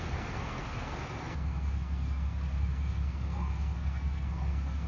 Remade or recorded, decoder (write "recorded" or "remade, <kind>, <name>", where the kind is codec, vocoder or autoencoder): remade, codec, SNAC